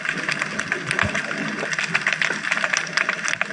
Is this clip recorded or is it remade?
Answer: recorded